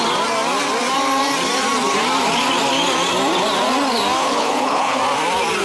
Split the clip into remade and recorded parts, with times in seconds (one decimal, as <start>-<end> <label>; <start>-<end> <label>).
0.0-4.2 recorded; 4.2-5.0 remade; 5.0-5.6 recorded